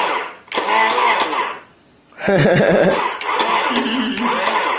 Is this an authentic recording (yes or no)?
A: yes